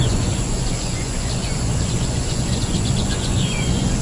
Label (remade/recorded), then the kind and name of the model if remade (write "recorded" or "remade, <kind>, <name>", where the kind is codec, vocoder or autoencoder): remade, vocoder, Vocos